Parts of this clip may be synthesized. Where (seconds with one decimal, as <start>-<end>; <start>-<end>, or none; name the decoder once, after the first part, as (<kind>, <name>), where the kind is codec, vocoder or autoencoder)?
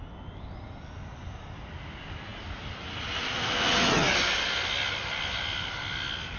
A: none